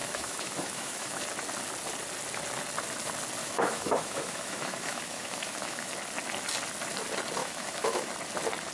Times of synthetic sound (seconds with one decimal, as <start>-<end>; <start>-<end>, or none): 0.0-1.2; 3.4-5.9; 7.4-8.1